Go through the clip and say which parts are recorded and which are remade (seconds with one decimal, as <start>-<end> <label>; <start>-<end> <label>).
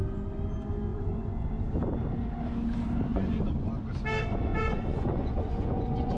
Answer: 0.0-0.9 recorded; 0.9-1.5 remade; 1.5-3.1 recorded; 3.1-3.7 remade; 3.7-4.5 recorded; 4.5-6.2 remade